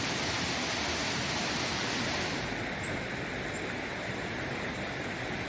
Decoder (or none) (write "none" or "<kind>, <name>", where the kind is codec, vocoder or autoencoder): none